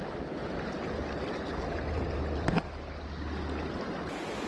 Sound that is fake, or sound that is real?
real